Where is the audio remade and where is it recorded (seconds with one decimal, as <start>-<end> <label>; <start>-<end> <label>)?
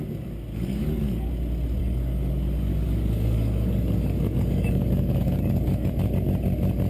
0.0-0.5 recorded; 0.5-1.3 remade; 1.3-1.8 recorded; 1.8-5.9 remade; 5.9-6.9 recorded